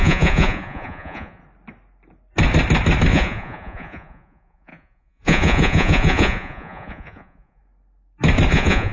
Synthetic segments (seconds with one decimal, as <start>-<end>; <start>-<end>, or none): 0.0-1.4; 3.1-7.6; 8.5-8.9

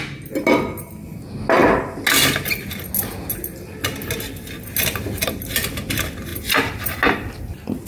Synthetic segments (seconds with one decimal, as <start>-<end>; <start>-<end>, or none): none

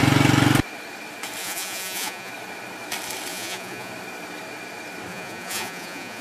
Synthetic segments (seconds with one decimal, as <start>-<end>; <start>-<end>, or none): 1.4-2.3; 3.3-3.9; 5.1-6.2

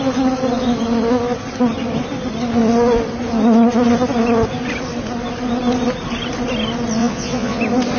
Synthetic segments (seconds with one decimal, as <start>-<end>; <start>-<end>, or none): 7.0-7.6

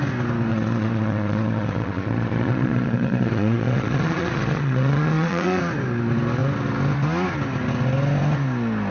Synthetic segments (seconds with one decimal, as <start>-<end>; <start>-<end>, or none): 0.5-5.6

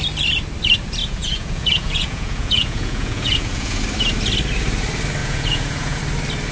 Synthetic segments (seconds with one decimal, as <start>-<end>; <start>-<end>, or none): 1.0-3.8; 5.2-6.0